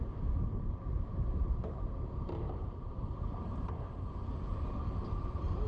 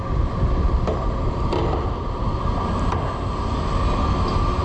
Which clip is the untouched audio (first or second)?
second